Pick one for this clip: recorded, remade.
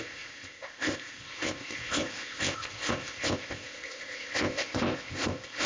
remade